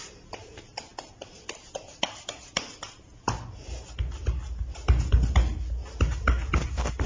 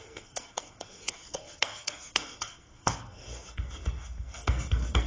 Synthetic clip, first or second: second